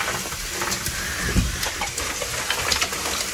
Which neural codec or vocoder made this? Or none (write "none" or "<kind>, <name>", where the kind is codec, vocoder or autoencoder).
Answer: none